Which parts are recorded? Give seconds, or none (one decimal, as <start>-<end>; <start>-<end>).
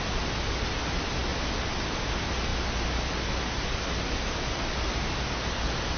0.0-6.0